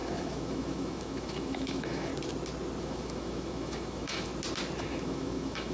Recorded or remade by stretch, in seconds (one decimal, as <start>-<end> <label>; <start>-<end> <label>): 0.0-2.1 remade; 2.1-2.8 recorded; 2.8-4.3 remade; 4.3-4.8 recorded; 4.8-5.7 remade